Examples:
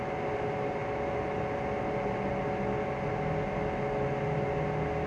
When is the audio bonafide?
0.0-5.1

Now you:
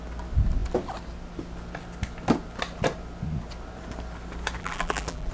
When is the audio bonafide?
0.0-4.6

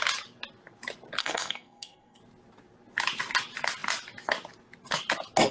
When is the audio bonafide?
0.0-1.2; 2.2-5.5

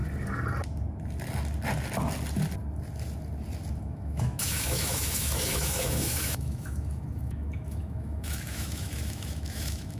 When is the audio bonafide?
0.0-3.8

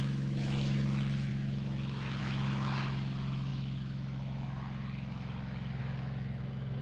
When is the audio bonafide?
none

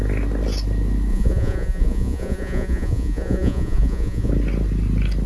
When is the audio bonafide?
0.0-1.1; 4.3-5.3

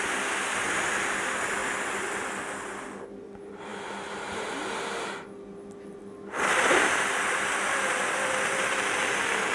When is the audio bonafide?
0.0-9.5